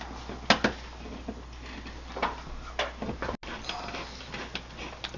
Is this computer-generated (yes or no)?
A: no